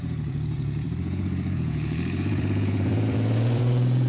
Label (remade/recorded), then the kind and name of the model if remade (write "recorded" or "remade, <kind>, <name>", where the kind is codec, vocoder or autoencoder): remade, vocoder, Vocos